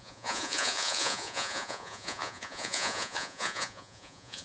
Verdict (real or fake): fake